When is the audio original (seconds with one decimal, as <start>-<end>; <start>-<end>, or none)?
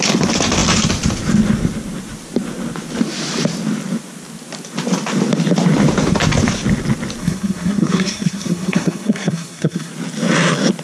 0.0-7.2; 9.9-10.8